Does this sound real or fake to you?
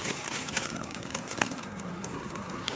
fake